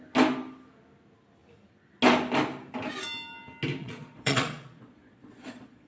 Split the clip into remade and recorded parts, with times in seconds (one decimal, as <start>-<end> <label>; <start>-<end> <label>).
0.0-3.8 recorded; 3.8-5.9 remade